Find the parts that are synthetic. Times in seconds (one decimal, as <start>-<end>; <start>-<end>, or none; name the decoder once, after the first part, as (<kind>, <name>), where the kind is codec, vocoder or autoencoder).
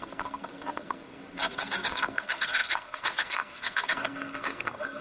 0.0-5.0 (codec, SNAC)